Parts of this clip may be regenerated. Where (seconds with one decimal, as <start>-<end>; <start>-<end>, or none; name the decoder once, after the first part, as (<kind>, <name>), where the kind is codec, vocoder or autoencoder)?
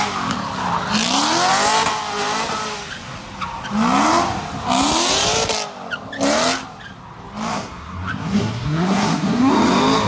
7.5-9.5 (codec, SNAC)